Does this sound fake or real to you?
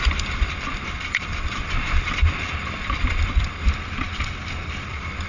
fake